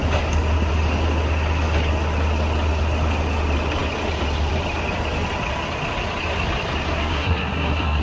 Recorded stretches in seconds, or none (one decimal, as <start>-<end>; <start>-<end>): 0.0-6.9